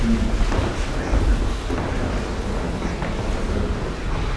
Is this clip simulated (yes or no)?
no